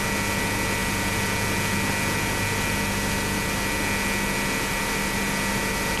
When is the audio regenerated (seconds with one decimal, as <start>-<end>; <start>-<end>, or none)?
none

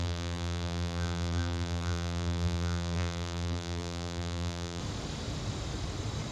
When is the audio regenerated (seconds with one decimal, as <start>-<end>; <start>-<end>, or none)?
0.0-4.8

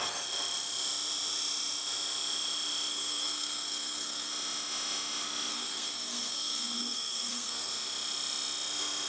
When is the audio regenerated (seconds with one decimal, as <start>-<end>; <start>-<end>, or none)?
2.9-4.3; 5.5-7.7

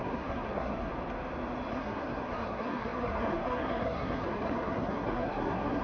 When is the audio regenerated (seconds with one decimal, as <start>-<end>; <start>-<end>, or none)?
0.0-0.9; 1.7-5.8